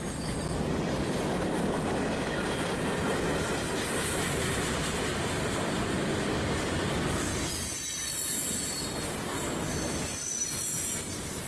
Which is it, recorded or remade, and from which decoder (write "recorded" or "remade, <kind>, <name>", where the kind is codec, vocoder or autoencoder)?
recorded